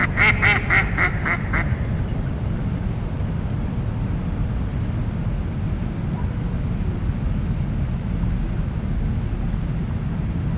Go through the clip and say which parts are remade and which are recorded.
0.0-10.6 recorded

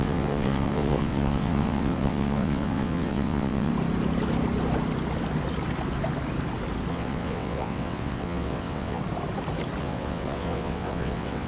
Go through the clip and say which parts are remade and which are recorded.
0.0-3.7 remade; 3.7-6.9 recorded; 6.9-9.0 remade; 9.0-9.8 recorded; 9.8-11.5 remade

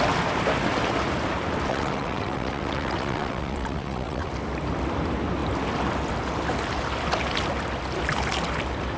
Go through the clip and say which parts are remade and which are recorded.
0.0-1.7 recorded; 1.7-4.3 remade; 4.3-9.0 recorded

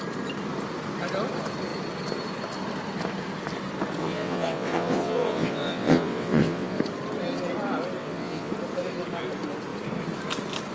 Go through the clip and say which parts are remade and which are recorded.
0.0-4.0 recorded; 4.0-6.8 remade; 6.8-8.0 recorded; 8.0-8.5 remade; 8.5-10.7 recorded

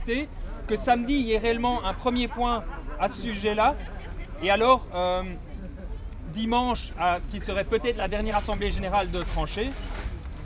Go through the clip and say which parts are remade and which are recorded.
0.0-8.0 recorded; 8.0-8.8 remade; 8.8-10.4 recorded